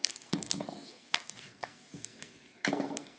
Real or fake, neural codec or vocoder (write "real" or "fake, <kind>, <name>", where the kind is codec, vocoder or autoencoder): fake, codec, SNAC